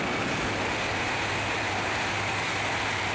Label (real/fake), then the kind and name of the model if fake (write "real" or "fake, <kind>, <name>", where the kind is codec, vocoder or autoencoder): real